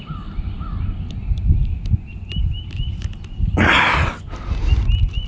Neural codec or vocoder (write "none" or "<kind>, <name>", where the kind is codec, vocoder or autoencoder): none